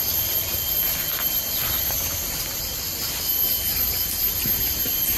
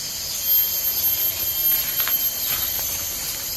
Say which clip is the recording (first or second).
second